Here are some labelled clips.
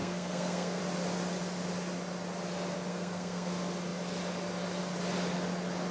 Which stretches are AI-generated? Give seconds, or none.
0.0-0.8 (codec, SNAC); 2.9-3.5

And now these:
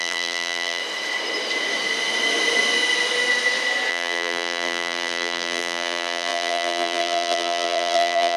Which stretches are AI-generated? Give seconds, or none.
0.0-0.8 (vocoder, BigVGAN v2); 3.9-8.4